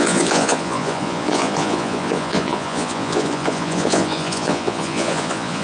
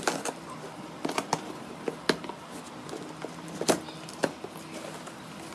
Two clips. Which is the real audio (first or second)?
second